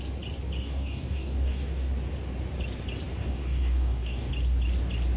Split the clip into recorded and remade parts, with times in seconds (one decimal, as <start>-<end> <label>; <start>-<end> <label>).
0.0-0.6 recorded; 0.6-1.9 remade; 1.9-3.2 recorded; 3.2-4.3 remade; 4.3-5.2 recorded